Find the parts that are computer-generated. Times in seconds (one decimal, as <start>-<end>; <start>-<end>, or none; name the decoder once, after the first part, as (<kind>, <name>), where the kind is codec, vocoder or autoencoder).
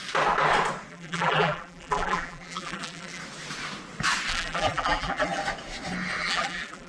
0.9-3.2 (vocoder, BigVGAN v2); 4.3-5.4; 6.2-6.9